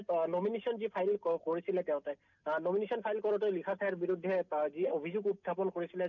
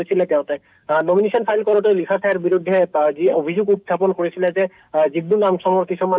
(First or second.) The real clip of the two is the first